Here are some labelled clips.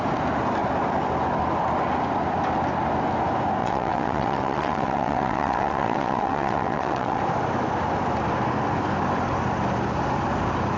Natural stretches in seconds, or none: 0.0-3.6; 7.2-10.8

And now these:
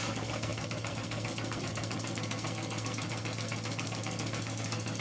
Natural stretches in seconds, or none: none

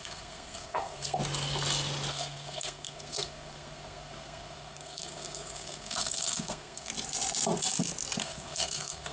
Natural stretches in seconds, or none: 1.2-2.1; 6.9-8.2

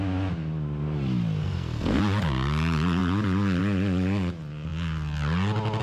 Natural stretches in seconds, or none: 0.0-1.4; 2.0-5.8

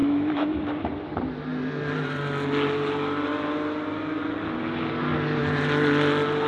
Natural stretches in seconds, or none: 0.6-6.5